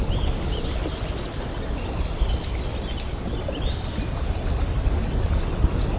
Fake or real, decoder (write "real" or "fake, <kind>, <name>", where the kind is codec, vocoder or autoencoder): real